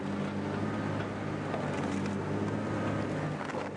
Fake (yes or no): no